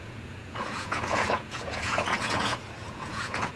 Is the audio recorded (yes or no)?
no